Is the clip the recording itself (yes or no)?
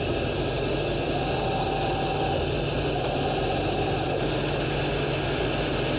yes